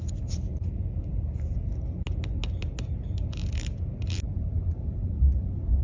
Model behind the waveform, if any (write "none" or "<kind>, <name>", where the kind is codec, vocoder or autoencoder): none